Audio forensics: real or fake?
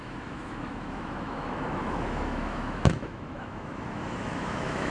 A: fake